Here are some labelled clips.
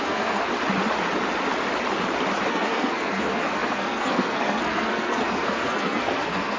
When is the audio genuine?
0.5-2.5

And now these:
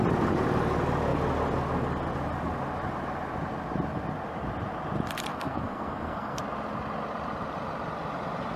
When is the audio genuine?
0.0-5.3; 6.4-8.6

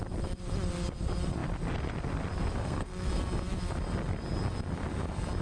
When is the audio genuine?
0.0-2.6; 3.1-5.4

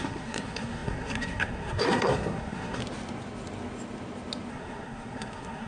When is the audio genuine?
2.8-4.5

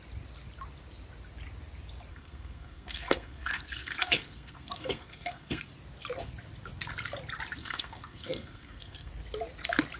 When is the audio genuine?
0.0-2.1; 5.7-7.6; 9.1-10.0

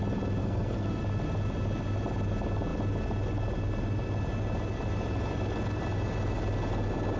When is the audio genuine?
0.0-0.4; 1.0-7.2

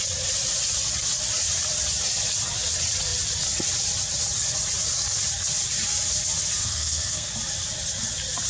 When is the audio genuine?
0.0-6.6; 7.3-8.5

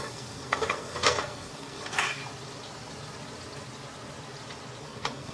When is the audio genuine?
2.2-4.8